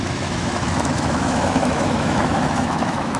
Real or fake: fake